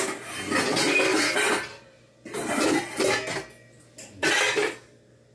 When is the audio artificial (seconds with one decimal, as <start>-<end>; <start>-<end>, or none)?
none